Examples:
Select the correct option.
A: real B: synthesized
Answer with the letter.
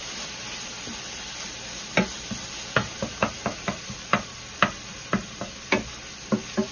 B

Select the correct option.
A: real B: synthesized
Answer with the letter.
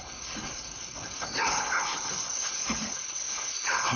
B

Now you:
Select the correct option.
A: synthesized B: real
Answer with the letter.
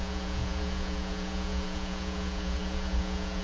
A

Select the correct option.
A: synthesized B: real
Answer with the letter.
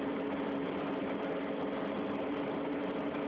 B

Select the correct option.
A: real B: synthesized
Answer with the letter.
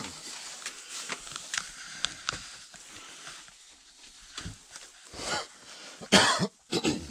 A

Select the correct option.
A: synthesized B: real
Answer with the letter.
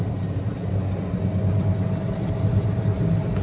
B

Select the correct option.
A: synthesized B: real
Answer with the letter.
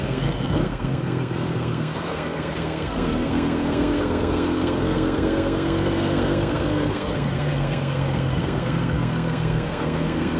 A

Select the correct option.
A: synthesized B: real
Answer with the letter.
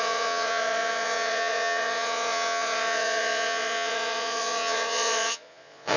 A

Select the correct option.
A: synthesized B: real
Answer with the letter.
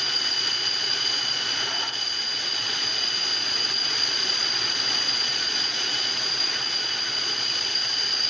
A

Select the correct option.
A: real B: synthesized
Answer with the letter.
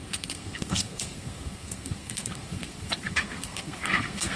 B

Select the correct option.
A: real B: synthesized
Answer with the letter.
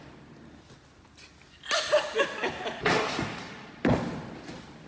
A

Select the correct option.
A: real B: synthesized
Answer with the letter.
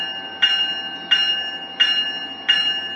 A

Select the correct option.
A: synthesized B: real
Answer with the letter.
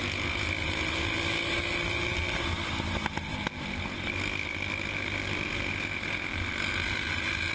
B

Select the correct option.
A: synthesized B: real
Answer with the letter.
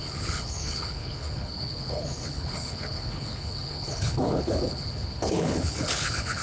A